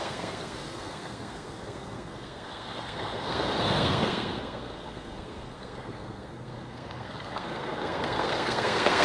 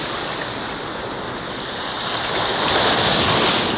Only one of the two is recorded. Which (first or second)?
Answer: second